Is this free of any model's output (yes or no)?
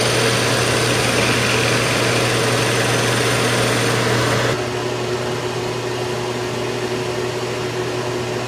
yes